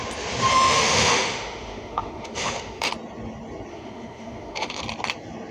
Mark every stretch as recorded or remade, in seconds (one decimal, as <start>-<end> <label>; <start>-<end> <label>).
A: 0.0-0.5 recorded; 0.5-2.9 remade; 2.9-3.7 recorded; 3.7-4.8 remade; 4.8-5.5 recorded